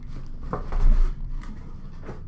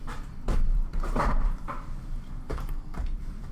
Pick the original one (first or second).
first